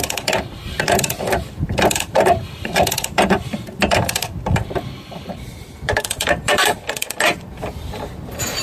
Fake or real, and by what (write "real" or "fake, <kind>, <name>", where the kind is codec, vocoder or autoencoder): fake, vocoder, BigVGAN v2